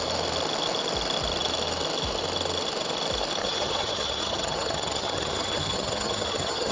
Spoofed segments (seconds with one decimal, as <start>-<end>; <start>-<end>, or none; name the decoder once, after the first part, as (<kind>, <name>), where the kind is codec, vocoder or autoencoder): 3.4-6.7 (vocoder, HiFi-GAN)